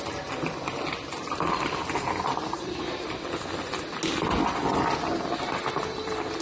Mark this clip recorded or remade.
recorded